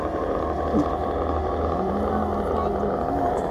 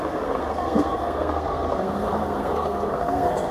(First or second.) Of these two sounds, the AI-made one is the second